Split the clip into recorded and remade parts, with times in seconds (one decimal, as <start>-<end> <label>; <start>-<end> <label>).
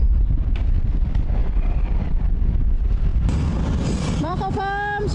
0.0-1.4 recorded; 1.4-2.3 remade; 2.3-3.1 recorded; 3.1-4.6 remade; 4.6-5.1 recorded